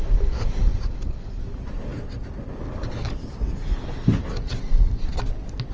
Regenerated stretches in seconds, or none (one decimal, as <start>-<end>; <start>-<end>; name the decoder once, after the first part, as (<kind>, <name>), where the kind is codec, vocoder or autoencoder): none